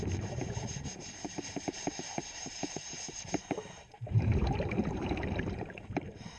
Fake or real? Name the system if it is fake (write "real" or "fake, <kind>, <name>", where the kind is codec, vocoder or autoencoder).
fake, vocoder, BigVGAN v2